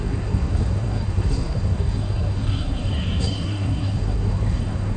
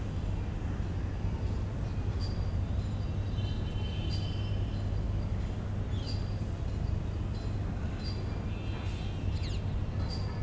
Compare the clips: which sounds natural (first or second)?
second